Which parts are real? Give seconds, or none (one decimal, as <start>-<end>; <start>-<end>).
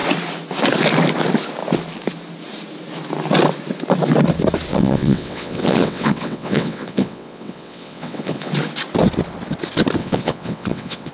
0.0-4.7; 8.5-10.0